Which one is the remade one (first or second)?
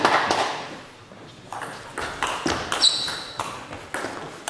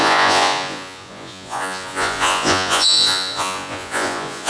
second